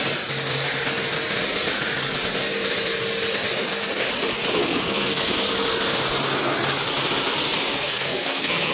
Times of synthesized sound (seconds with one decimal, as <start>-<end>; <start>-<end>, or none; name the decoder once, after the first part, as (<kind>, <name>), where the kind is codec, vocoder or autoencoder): 4.6-5.3 (codec, SNAC); 7.7-8.7